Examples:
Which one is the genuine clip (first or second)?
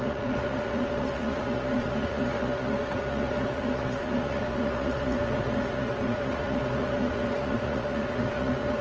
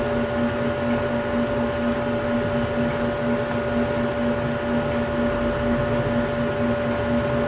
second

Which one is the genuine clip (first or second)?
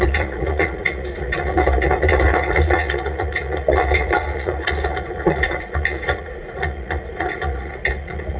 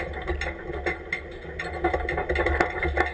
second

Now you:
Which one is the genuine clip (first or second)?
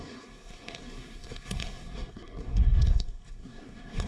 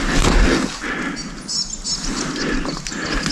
second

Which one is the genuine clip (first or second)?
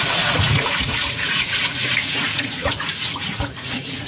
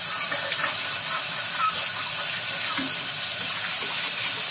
second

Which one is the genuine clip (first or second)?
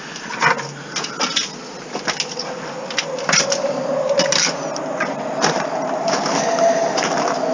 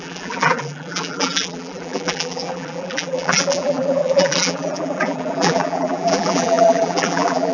first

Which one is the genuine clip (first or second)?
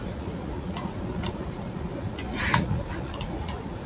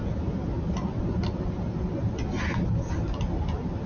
second